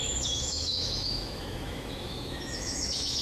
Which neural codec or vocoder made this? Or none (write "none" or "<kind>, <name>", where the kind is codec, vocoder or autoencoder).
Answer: autoencoder, DAC-VAE